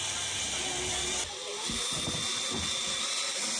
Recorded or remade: recorded